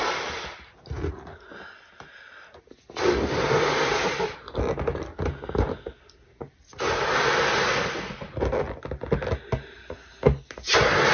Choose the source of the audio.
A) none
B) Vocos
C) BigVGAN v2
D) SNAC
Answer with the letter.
A